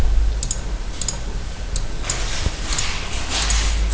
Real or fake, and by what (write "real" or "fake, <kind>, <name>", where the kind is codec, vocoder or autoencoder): real